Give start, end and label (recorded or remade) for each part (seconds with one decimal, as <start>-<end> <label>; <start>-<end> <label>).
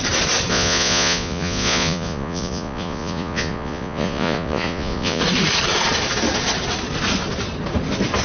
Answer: 0.0-0.5 recorded; 0.5-5.2 remade; 5.2-8.2 recorded